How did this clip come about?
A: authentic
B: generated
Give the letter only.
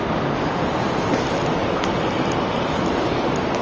A